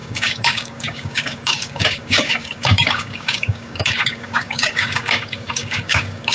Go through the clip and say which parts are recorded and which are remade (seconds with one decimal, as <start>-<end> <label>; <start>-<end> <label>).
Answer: 0.0-6.3 remade